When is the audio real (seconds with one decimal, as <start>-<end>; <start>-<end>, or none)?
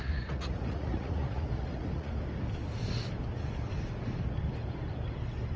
2.1-5.6